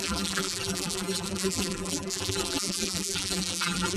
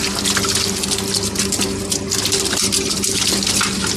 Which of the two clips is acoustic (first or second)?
second